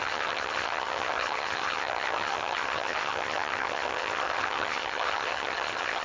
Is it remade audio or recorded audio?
remade